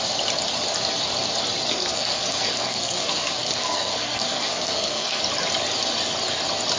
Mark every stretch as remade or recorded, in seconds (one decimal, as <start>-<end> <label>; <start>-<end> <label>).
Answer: 0.0-1.7 recorded; 1.7-5.2 remade; 5.2-6.8 recorded